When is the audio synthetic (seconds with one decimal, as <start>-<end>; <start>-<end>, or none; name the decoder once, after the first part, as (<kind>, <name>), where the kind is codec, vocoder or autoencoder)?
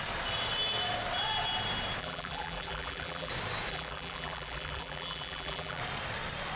2.0-3.3 (vocoder, BigVGAN v2); 3.7-5.8